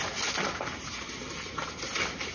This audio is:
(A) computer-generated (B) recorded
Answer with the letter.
B